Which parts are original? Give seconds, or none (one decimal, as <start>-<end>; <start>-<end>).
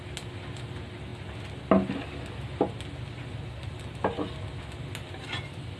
0.0-5.8